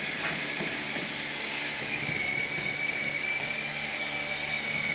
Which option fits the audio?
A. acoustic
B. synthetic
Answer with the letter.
B